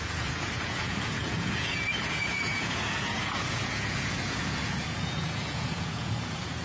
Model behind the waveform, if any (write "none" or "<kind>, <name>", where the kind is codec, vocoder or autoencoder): vocoder, Vocos